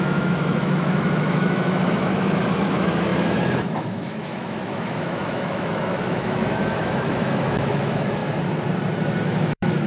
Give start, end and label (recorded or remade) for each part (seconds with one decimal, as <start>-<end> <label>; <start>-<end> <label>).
0.0-8.2 remade; 8.2-9.2 recorded; 9.2-9.9 remade